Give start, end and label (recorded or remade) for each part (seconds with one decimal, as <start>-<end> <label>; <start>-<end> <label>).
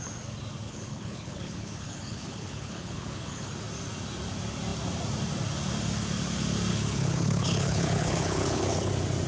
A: 0.0-0.6 recorded; 0.6-3.5 remade; 3.5-6.7 recorded; 6.7-8.9 remade; 8.9-9.3 recorded